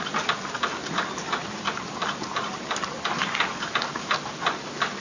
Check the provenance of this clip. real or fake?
real